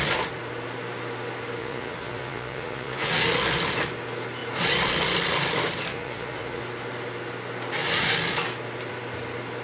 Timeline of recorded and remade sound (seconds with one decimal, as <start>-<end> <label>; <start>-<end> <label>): 0.0-1.6 recorded; 1.6-3.2 remade; 3.2-5.9 recorded; 5.9-6.6 remade; 6.6-9.6 recorded